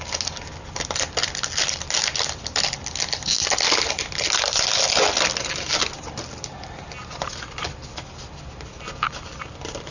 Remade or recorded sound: recorded